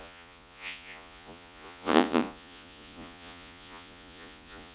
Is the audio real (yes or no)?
no